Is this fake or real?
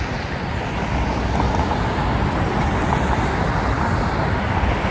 real